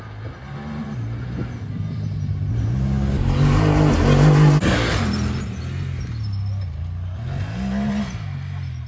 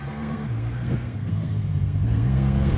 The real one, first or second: first